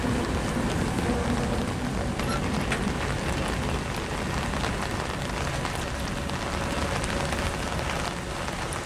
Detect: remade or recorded recorded